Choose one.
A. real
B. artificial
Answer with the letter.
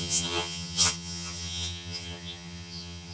B